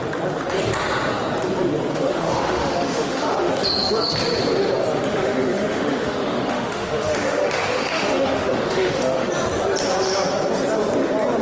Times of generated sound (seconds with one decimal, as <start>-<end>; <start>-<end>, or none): 1.9-3.5; 5.1-9.3